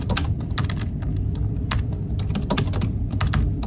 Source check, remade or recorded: recorded